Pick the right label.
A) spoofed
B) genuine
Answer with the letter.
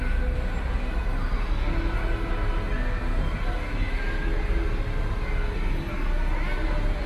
B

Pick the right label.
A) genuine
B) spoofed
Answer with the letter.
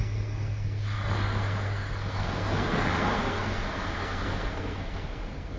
B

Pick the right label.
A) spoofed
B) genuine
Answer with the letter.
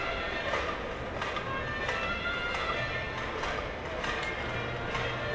B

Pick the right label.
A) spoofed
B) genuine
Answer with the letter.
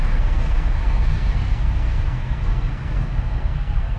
A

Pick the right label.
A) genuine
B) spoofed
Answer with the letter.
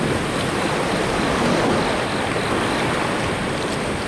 A